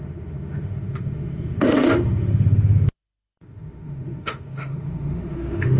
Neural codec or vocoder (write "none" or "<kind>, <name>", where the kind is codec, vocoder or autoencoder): autoencoder, DAC-VAE